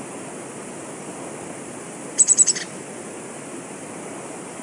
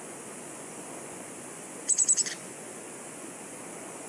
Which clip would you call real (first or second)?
first